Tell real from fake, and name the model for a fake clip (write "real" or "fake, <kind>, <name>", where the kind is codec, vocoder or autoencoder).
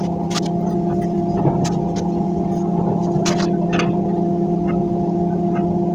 real